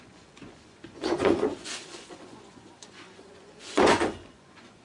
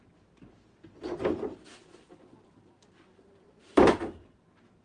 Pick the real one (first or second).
second